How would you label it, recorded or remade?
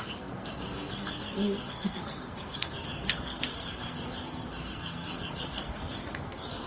remade